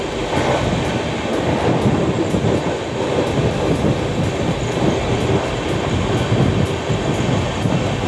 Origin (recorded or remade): recorded